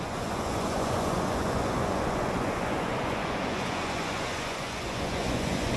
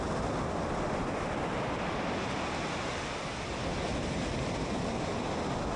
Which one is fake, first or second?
first